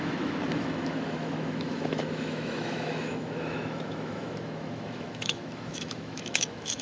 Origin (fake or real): fake